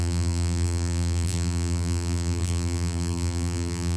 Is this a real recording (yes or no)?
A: no